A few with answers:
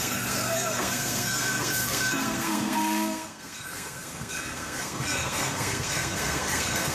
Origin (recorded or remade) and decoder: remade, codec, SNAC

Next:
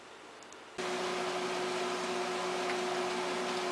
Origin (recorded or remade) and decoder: recorded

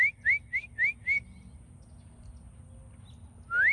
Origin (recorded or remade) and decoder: recorded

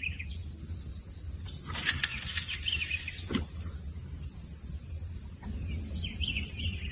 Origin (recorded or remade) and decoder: recorded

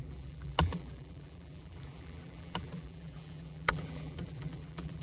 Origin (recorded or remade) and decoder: remade, vocoder, BigVGAN v2